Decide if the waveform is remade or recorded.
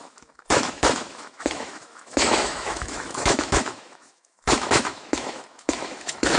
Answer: remade